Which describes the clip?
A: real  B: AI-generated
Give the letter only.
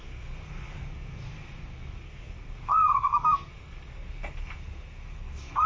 B